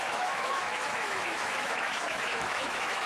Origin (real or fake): fake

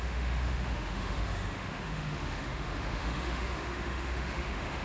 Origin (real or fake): fake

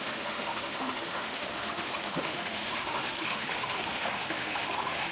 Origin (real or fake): fake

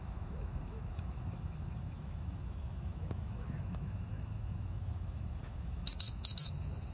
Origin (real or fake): fake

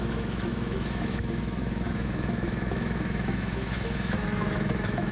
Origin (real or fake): fake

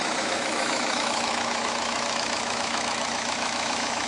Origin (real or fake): fake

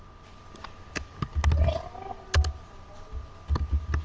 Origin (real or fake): real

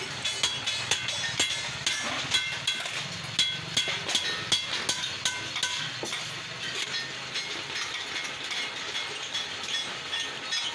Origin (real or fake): real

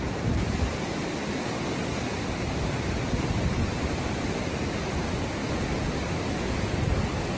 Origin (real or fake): real